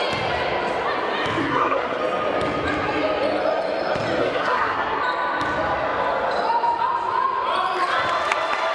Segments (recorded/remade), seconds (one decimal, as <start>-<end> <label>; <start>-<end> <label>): 0.0-1.4 recorded; 1.4-2.0 remade; 2.0-4.2 recorded; 4.2-5.0 remade; 5.0-8.7 recorded